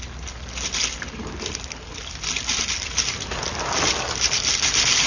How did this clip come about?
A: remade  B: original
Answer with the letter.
B